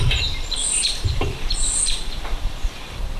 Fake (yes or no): yes